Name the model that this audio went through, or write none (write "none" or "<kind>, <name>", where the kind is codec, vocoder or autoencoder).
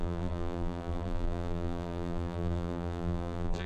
vocoder, BigVGAN v2